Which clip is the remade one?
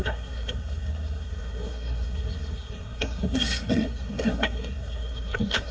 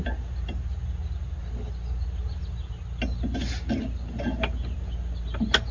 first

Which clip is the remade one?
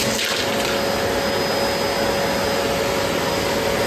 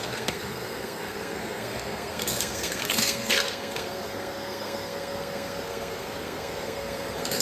second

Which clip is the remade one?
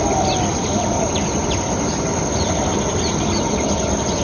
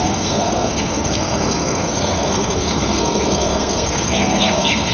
second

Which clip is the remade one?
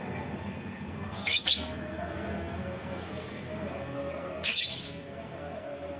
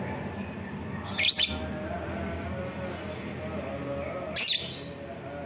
first